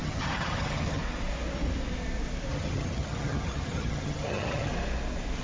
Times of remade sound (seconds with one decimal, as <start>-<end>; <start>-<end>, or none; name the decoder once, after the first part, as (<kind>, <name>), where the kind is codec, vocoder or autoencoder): 0.0-1.0 (vocoder, HiFi-GAN); 2.5-4.7